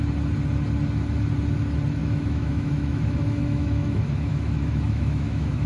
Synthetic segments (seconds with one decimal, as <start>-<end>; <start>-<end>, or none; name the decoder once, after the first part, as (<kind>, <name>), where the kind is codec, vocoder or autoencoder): 2.0-5.7 (autoencoder, DAC-VAE)